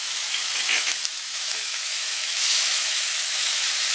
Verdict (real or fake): fake